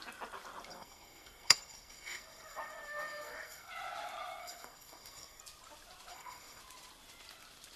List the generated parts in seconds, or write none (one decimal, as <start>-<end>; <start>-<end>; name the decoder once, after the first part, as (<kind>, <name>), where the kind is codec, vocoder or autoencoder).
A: 0.7-3.7 (codec, SNAC); 4.4-5.4; 6.1-6.6